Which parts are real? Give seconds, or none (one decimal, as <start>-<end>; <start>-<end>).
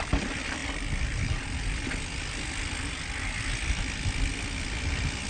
0.0-5.3